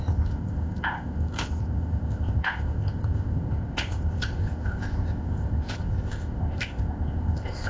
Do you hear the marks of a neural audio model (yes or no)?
yes